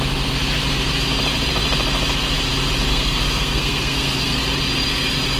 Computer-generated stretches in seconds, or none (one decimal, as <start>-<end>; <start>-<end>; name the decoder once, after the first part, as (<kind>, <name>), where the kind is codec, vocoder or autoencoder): 2.9-4.4 (codec, SNAC)